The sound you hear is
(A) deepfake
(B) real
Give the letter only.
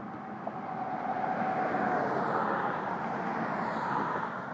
B